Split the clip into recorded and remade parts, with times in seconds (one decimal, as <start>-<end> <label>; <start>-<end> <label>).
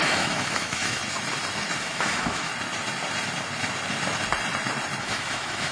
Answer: 0.0-1.0 remade; 1.0-1.8 recorded; 1.8-2.5 remade; 2.5-5.0 recorded; 5.0-5.7 remade